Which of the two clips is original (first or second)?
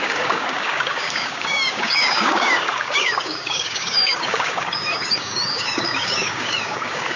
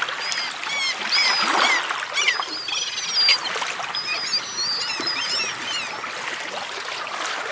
second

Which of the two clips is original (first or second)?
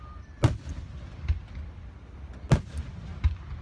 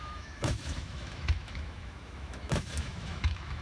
first